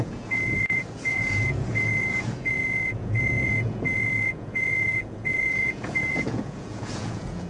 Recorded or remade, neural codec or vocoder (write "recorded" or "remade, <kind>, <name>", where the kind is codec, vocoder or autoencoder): remade, vocoder, Vocos